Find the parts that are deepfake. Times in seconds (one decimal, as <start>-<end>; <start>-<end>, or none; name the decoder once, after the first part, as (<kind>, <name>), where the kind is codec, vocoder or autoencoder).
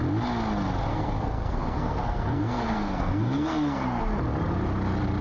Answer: 0.9-4.0 (codec, SNAC)